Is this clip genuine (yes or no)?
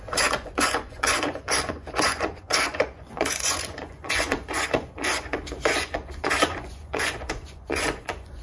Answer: no